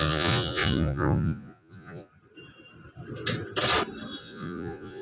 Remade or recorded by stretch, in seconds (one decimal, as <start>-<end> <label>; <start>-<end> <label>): 0.0-2.1 remade; 2.1-4.2 recorded; 4.2-5.0 remade